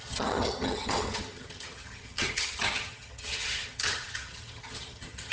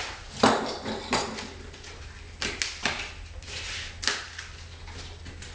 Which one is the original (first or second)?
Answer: second